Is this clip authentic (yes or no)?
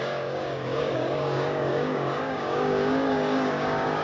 no